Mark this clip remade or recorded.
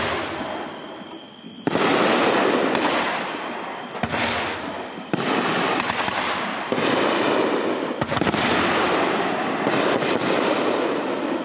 recorded